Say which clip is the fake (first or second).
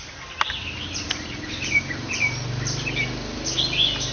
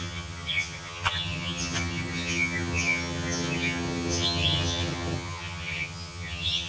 second